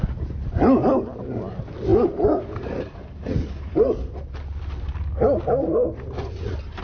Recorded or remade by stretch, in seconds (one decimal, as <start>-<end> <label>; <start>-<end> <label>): 0.0-6.8 recorded